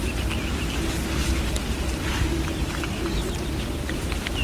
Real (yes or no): yes